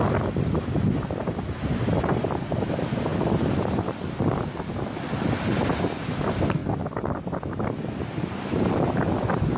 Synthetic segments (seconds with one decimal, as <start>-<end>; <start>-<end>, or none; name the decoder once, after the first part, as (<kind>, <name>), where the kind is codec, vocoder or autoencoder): none